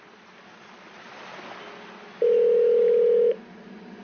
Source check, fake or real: real